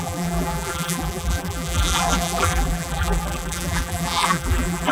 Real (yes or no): no